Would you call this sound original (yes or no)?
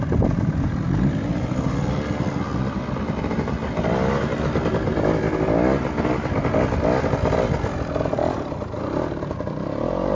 yes